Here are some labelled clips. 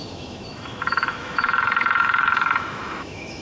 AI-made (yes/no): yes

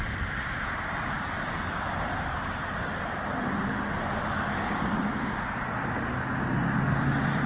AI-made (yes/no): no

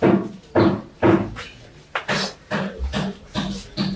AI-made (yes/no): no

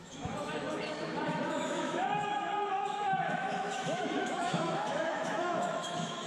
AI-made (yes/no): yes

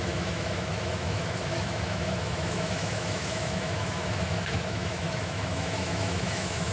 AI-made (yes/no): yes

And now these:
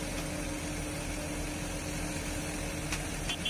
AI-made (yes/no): no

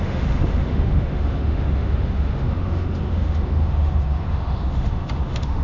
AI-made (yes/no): yes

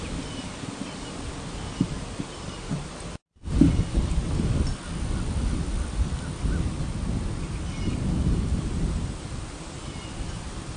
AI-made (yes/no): no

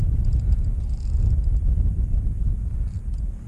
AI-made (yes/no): no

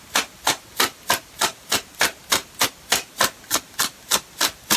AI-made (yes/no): no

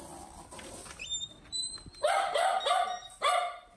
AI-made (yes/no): no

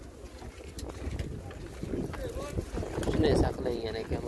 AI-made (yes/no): no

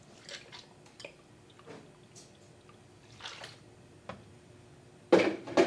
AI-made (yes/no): no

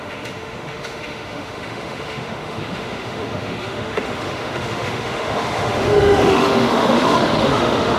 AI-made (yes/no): yes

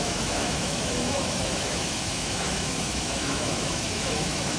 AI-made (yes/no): yes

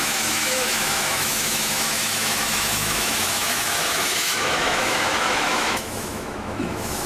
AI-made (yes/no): yes